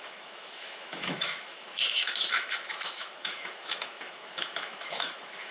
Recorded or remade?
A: remade